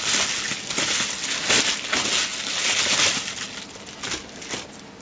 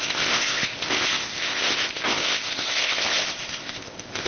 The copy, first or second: second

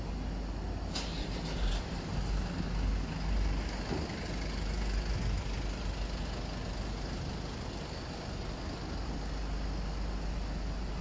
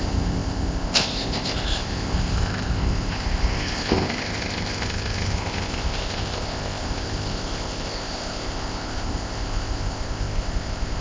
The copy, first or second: second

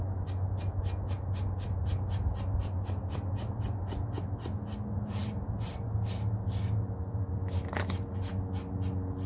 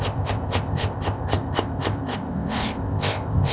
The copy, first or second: second